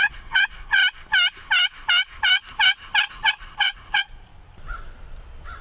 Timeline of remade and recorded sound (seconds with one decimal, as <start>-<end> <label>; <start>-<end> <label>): 0.0-0.8 remade; 0.8-3.1 recorded; 3.1-4.3 remade; 4.3-5.6 recorded